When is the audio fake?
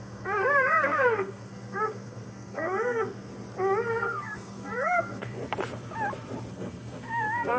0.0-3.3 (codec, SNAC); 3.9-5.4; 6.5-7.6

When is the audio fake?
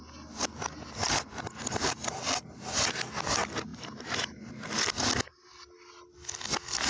1.0-2.4 (vocoder, BigVGAN v2); 3.7-4.5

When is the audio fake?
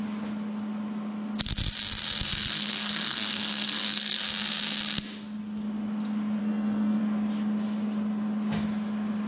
2.3-4.2 (codec, SNAC); 6.4-7.0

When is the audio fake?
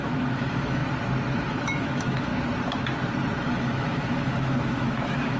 0.0-0.8 (autoencoder, DAC-VAE); 1.5-2.3; 3.4-5.4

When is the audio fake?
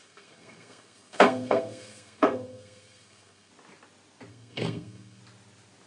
0.0-3.5 (codec, SNAC); 4.3-5.2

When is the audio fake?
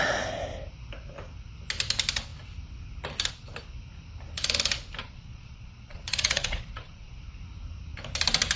5.0-7.2 (vocoder, Vocos)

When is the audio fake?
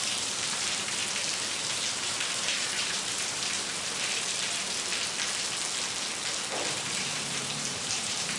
0.0-1.0 (vocoder, BigVGAN v2); 1.6-4.9; 6.7-8.4